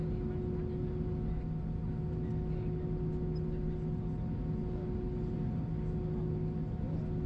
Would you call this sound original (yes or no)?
yes